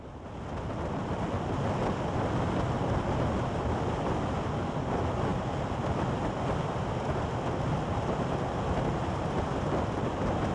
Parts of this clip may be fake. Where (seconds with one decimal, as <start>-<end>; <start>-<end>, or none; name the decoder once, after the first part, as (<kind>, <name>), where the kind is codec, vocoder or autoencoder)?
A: none